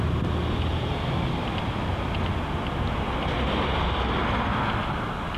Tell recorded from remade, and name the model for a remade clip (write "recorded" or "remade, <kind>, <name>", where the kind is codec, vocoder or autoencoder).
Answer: recorded